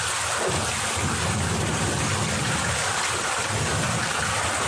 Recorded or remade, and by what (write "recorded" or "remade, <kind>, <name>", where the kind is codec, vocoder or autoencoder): recorded